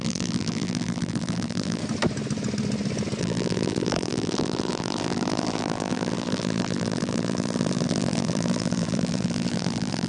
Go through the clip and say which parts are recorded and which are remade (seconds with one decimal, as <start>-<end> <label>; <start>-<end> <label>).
0.0-1.8 remade; 1.8-3.2 recorded; 3.2-10.1 remade